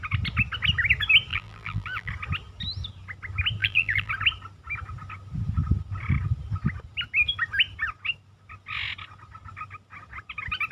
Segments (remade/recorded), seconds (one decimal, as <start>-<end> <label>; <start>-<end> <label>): 0.0-1.3 recorded; 1.3-2.1 remade; 2.1-3.6 recorded; 3.6-4.1 remade; 4.1-10.7 recorded